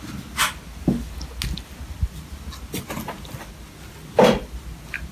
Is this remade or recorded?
recorded